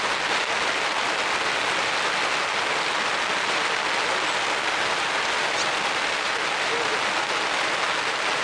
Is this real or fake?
real